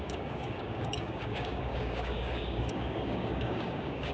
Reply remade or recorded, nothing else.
remade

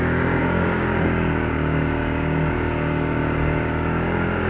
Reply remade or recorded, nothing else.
remade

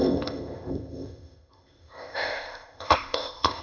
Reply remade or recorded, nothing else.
remade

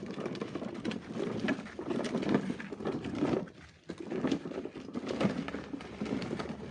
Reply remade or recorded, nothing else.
recorded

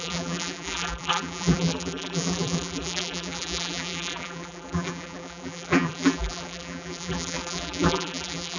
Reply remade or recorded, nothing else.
remade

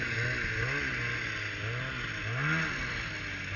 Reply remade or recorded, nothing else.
recorded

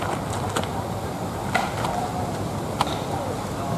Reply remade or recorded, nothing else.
recorded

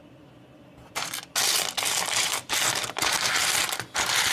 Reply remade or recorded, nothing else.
recorded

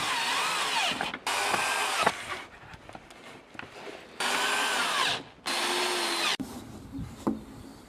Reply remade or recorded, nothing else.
recorded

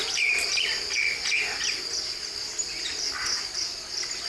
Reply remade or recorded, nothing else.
recorded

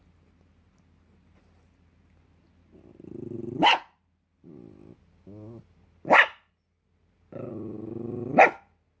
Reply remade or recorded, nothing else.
recorded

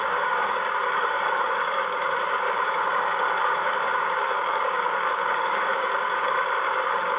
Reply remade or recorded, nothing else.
remade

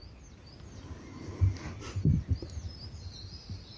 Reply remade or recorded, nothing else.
recorded